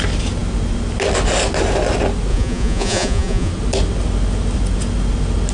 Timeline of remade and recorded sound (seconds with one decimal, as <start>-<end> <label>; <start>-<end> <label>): 0.0-2.3 recorded; 2.3-3.5 remade; 3.5-5.5 recorded